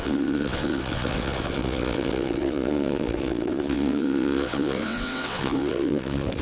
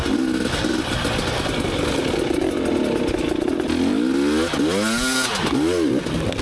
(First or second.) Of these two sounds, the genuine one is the second